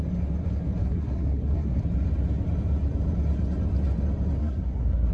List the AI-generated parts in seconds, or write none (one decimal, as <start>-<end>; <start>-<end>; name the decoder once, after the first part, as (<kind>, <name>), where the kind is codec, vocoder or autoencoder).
0.8-1.8 (codec, SNAC); 4.4-5.1